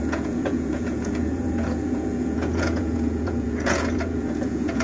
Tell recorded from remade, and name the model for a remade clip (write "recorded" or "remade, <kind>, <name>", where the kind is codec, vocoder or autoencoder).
remade, vocoder, Vocos